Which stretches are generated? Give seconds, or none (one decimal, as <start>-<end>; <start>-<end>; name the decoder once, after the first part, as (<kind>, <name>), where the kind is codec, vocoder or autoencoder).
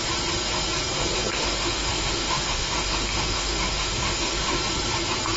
1.4-4.6 (autoencoder, DAC-VAE)